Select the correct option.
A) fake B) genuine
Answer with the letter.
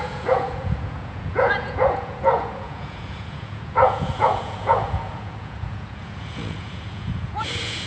A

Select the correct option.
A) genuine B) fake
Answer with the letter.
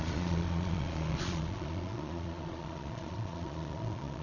B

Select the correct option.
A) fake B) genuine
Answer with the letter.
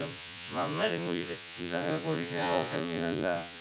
A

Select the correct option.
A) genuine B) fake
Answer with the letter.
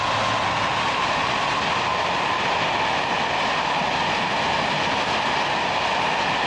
A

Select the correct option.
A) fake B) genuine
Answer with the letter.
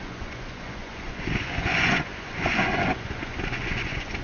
A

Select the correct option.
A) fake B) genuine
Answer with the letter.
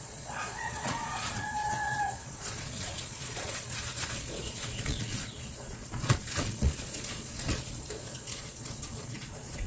A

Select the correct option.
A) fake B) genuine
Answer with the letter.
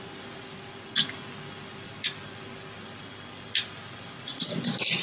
B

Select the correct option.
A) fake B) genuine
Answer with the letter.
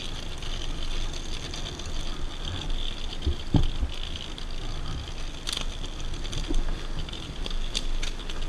B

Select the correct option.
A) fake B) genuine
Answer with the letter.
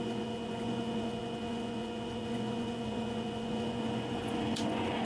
A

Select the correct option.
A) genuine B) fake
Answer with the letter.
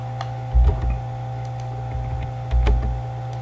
A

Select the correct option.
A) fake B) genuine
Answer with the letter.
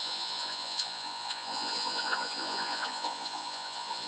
A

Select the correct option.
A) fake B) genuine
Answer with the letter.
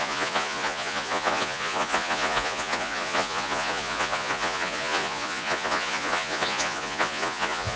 A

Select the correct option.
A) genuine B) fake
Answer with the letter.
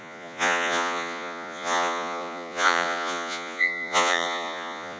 B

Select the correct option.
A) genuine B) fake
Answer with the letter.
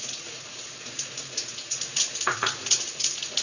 B